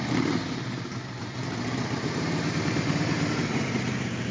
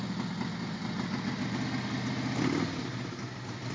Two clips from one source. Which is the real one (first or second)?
second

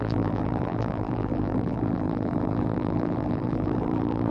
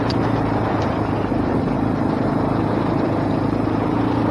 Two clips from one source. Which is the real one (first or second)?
second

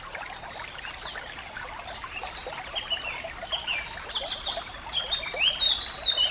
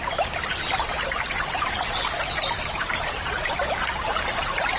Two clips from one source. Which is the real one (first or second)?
first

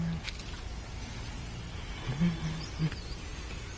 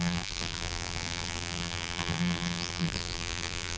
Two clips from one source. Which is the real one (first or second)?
first